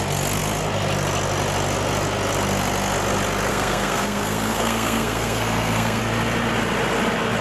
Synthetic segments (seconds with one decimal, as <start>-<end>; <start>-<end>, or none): 3.5-6.0